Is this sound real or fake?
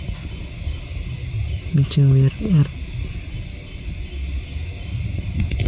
real